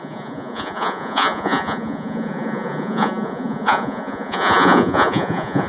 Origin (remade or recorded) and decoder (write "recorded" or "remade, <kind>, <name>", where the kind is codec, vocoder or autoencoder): remade, vocoder, Vocos